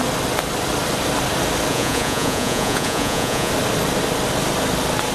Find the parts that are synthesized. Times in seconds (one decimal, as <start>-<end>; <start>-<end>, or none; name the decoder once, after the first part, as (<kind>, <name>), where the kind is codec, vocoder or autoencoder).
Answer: 1.7-3.5 (vocoder, Vocos)